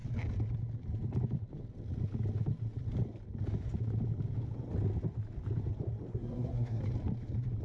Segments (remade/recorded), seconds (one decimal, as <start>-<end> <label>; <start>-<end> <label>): 0.0-6.1 recorded; 6.1-6.8 remade; 6.8-7.6 recorded

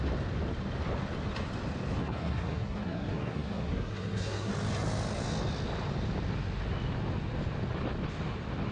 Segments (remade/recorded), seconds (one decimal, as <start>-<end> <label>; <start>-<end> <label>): 0.0-2.0 recorded; 2.0-4.5 remade; 4.5-8.7 recorded

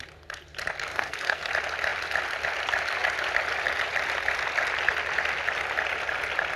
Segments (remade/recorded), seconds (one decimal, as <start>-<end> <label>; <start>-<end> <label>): 0.0-0.9 recorded; 0.9-1.5 remade; 1.5-6.6 recorded